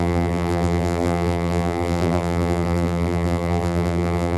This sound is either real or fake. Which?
fake